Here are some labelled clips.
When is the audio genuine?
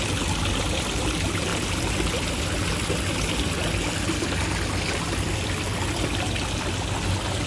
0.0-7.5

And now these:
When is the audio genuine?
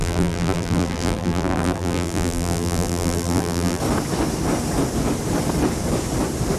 3.8-6.6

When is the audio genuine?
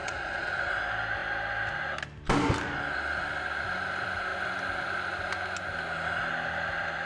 0.7-7.1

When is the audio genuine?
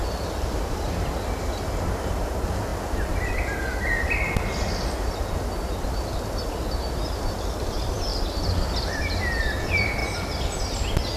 0.0-11.2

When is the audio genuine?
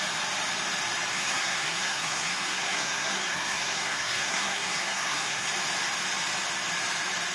0.0-1.1; 5.5-7.3